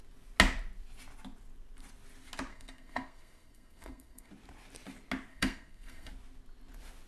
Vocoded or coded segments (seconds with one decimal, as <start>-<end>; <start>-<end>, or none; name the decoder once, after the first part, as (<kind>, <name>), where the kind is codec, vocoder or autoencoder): 2.5-4.3 (codec, SNAC); 5.3-6.1